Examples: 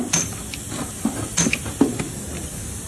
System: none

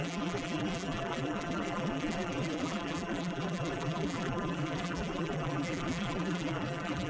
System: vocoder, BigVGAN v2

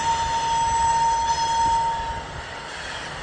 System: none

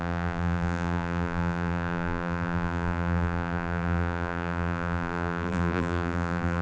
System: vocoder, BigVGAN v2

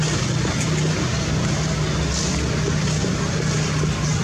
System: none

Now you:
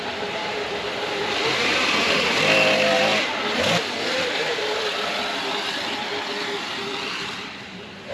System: vocoder, BigVGAN v2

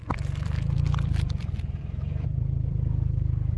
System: vocoder, BigVGAN v2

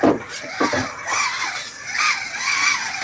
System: none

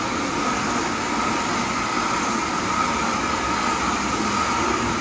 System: none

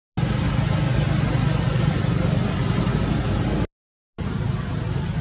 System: none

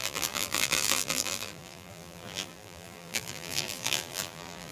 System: vocoder, BigVGAN v2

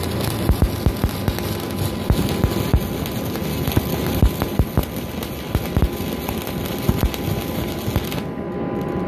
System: none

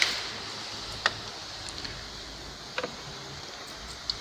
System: vocoder, BigVGAN v2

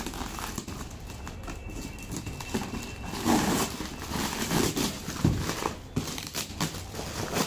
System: vocoder, BigVGAN v2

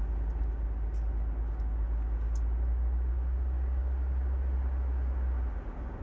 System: none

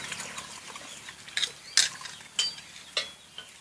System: none